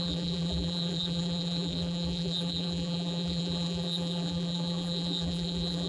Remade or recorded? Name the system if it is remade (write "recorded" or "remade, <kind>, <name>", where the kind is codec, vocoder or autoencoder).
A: remade, vocoder, BigVGAN v2